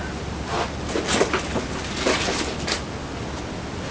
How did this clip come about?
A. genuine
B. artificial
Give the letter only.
A